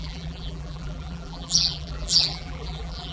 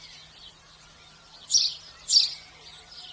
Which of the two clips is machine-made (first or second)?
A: first